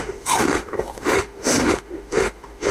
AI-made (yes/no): yes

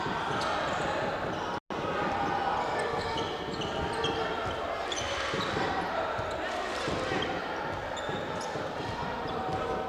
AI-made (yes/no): no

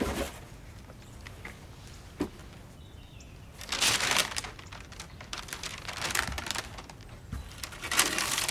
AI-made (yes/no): no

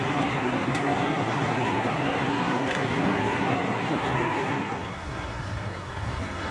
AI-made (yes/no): yes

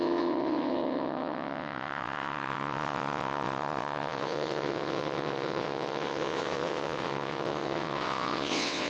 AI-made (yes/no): yes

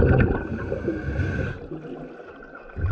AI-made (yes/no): no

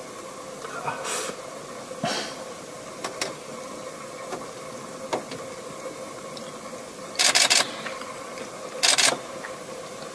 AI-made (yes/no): no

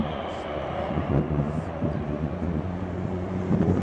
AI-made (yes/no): yes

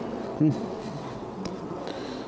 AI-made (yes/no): yes